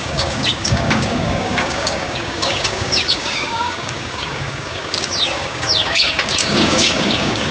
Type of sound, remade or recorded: remade